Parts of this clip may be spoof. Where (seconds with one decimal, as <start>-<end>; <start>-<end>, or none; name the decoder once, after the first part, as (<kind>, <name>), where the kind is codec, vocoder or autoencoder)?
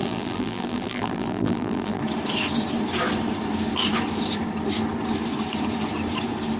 0.0-2.0 (vocoder, BigVGAN v2)